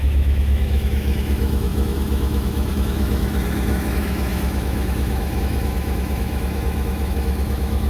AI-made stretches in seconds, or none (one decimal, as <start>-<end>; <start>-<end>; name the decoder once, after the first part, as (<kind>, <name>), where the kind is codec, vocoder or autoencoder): 0.0-7.9 (autoencoder, DAC-VAE)